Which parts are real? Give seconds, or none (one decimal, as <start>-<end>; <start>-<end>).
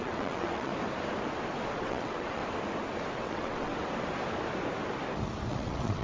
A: 0.7-1.8; 2.4-3.1; 3.7-5.5